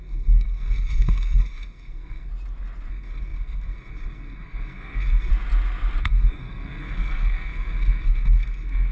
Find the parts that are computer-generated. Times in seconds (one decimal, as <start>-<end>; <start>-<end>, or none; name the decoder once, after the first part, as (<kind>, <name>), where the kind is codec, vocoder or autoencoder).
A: 0.0-2.3 (codec, SNAC); 2.9-5.3; 6.0-8.9